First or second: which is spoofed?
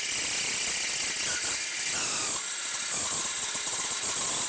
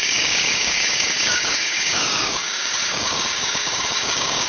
second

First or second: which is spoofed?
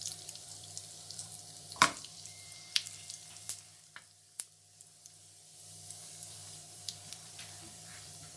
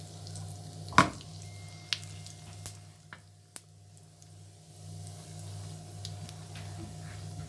first